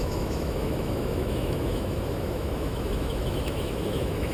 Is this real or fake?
fake